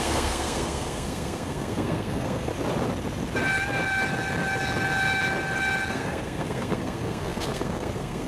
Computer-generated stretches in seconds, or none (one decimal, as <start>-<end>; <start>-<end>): 0.0-2.5; 5.9-8.3